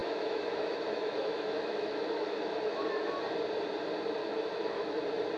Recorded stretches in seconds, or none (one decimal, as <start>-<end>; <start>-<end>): 3.2-4.2; 5.0-5.4